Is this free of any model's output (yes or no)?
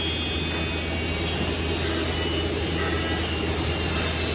yes